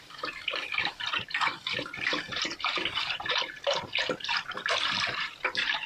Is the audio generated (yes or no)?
yes